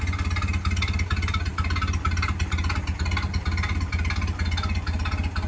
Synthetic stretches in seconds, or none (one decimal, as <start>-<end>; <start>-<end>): none